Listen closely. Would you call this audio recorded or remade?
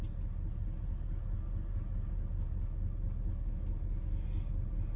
recorded